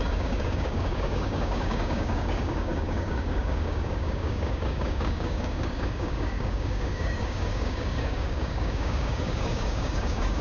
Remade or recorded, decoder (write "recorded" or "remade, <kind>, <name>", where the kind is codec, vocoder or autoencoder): remade, codec, DAC